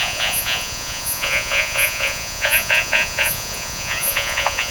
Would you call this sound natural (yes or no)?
no